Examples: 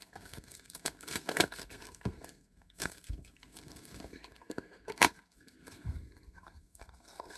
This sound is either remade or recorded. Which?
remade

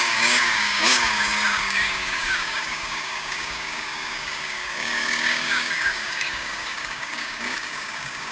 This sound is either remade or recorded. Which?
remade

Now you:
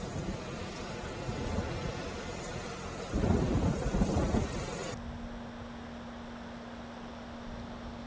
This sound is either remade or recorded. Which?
recorded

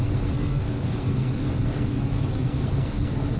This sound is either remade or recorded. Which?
remade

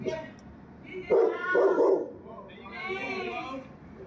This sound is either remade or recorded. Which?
recorded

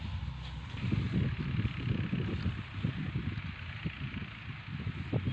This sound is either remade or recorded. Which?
recorded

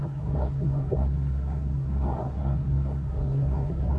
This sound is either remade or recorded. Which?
remade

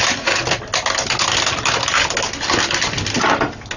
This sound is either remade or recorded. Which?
recorded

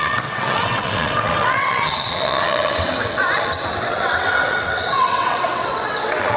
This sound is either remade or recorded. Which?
remade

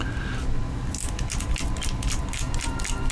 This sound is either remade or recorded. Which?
recorded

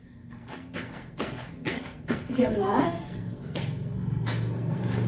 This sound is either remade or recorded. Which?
remade